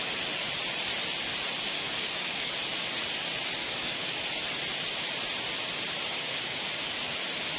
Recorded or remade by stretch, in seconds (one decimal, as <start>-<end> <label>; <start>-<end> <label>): 0.0-1.7 recorded; 1.7-2.5 remade; 2.5-3.6 recorded; 3.6-4.2 remade; 4.2-6.1 recorded; 6.1-6.6 remade; 6.6-7.6 recorded